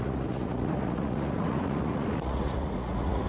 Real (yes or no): no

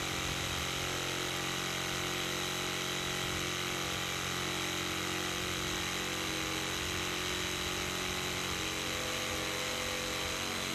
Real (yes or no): yes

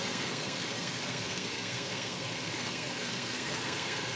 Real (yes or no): no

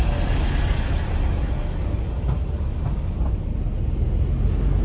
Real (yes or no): yes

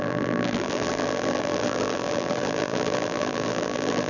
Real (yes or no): no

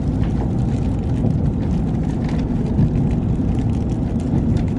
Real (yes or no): yes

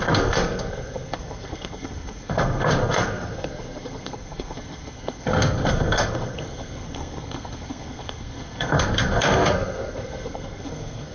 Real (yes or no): no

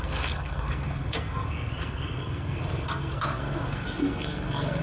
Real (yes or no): no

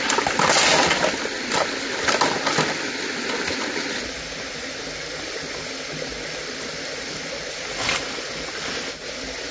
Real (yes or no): yes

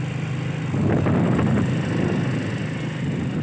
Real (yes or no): yes